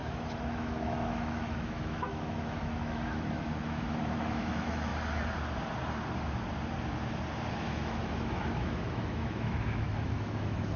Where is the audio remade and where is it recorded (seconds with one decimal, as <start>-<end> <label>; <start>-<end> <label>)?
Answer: 0.0-4.9 remade; 4.9-7.5 recorded; 7.5-10.8 remade